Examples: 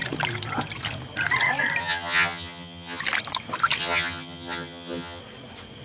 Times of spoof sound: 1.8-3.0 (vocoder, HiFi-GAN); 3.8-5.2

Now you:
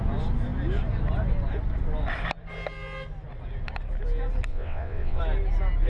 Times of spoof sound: 4.5-5.2 (vocoder, WaveNeXt)

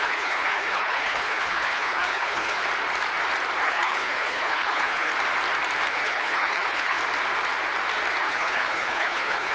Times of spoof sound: 0.0-2.6 (codec, HILCodec); 3.6-5.1; 5.9-7.0; 8.2-9.5